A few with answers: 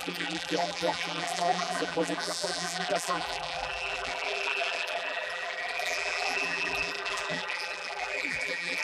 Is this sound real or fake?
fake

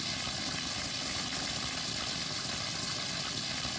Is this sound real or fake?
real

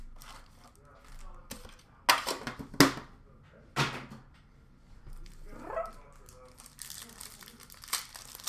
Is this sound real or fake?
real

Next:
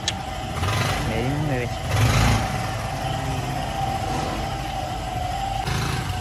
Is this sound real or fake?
real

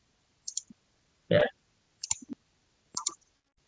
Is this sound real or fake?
real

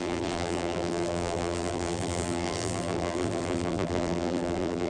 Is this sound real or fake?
fake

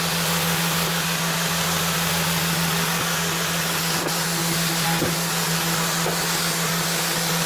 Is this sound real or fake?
real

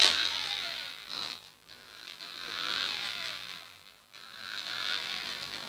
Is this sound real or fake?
fake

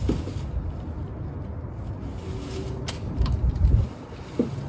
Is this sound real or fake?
real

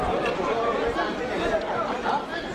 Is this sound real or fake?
real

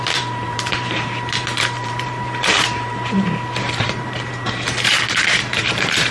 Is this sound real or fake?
fake